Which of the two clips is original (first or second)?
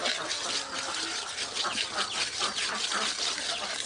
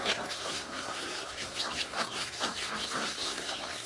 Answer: first